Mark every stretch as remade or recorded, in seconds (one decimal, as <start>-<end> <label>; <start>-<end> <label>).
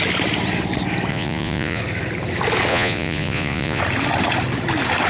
0.0-1.1 recorded; 1.1-1.8 remade; 1.8-2.7 recorded; 2.7-3.8 remade; 3.8-5.1 recorded